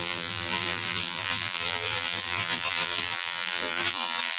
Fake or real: fake